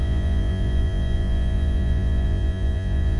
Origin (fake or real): fake